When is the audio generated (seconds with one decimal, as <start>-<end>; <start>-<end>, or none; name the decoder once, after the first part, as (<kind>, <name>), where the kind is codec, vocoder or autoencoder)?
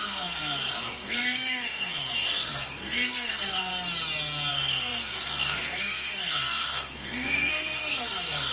0.0-3.7 (codec, SNAC); 4.5-8.5